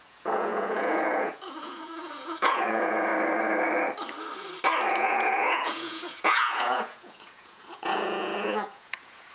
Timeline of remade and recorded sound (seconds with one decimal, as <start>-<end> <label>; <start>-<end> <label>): 0.0-3.1 remade; 3.1-4.9 recorded; 4.9-9.3 remade